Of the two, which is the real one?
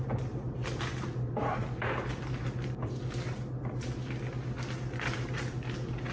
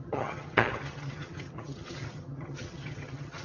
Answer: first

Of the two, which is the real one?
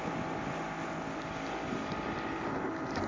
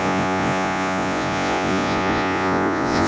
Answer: first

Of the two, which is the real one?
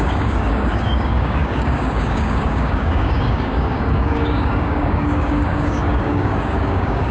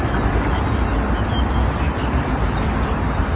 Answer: second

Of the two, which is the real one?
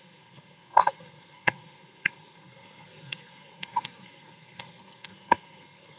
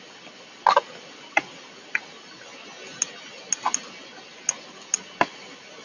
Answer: second